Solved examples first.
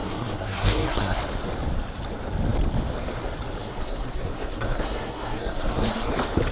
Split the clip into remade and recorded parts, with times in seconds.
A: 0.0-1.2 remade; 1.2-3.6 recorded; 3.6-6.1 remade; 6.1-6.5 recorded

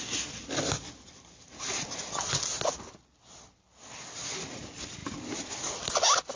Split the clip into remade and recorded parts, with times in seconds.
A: 0.0-6.4 recorded

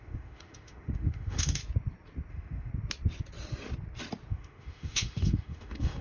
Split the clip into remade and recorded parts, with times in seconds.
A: 0.0-1.6 remade; 1.6-2.3 recorded; 2.3-2.7 remade; 2.7-4.3 recorded; 4.3-6.0 remade

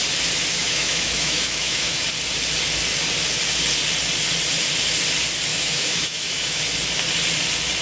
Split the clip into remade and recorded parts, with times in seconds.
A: 0.0-0.6 recorded; 0.6-2.1 remade; 2.1-5.5 recorded; 5.5-6.6 remade; 6.6-7.8 recorded

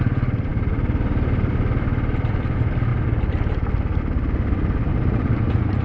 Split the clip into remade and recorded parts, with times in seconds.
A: 0.0-4.9 recorded; 4.9-5.8 remade